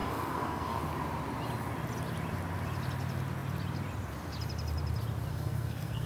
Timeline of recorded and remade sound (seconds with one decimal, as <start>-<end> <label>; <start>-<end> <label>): 0.0-0.8 remade; 0.8-5.3 recorded; 5.3-6.1 remade